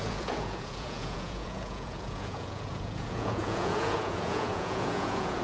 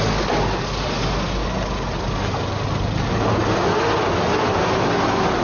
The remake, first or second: first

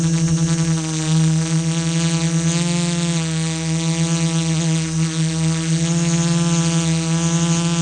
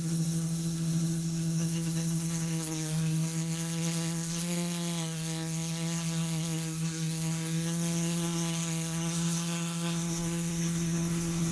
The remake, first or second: second